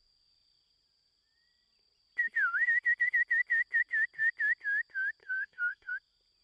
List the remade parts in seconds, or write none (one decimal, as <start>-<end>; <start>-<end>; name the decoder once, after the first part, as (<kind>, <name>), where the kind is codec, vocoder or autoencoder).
5.2-5.9 (codec, SNAC)

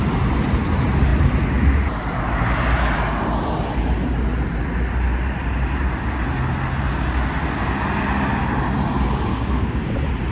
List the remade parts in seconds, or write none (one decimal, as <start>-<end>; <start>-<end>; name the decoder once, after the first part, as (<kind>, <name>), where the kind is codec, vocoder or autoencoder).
9.3-9.9 (codec, DAC)